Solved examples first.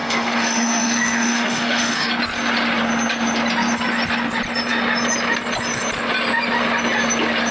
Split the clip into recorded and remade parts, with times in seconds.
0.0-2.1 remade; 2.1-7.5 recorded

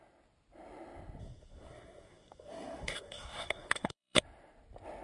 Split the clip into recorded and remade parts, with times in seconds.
0.0-1.2 recorded; 1.2-4.2 remade; 4.2-5.0 recorded

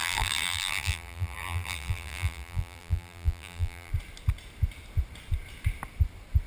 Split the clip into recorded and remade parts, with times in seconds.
0.0-3.9 remade; 3.9-6.5 recorded

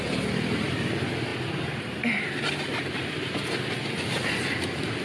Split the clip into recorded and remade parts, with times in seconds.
0.0-5.0 recorded

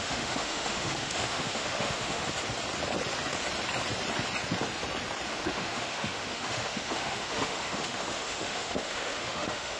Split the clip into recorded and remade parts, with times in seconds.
0.0-2.2 remade; 2.2-5.3 recorded; 5.3-9.8 remade

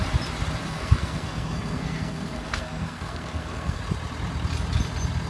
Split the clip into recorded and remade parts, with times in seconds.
0.0-0.6 recorded; 0.6-3.8 remade; 3.8-5.3 recorded